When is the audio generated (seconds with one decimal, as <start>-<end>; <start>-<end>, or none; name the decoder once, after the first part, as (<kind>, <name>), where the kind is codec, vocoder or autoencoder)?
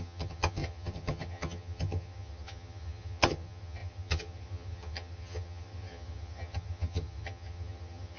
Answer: 0.0-8.2 (vocoder, HiFi-GAN)